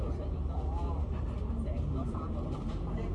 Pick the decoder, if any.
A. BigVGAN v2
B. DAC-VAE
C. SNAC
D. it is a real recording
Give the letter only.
A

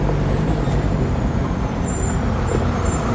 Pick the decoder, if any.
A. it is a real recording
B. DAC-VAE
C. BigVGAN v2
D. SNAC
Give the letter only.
C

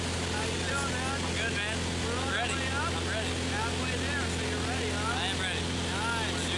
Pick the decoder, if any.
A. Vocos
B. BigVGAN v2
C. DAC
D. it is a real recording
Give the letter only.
D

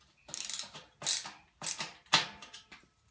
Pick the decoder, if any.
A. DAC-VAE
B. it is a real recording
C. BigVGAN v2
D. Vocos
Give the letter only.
B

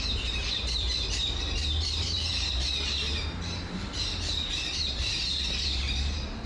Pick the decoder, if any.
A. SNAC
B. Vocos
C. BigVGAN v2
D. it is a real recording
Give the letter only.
C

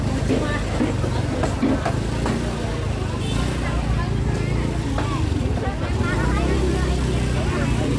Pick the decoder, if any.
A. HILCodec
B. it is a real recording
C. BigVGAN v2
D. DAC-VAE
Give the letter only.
B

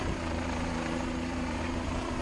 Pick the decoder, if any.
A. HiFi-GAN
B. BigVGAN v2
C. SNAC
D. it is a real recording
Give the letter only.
B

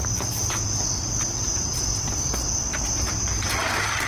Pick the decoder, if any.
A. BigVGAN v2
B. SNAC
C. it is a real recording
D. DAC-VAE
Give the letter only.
C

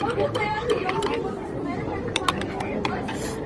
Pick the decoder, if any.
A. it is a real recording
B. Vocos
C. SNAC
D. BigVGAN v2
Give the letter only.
D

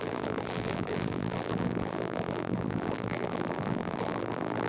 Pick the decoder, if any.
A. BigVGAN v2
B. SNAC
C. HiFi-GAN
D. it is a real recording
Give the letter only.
A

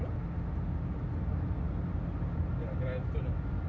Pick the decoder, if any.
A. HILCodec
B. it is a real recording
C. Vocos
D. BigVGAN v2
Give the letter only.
B